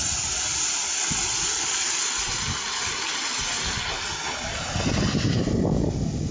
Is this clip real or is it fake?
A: real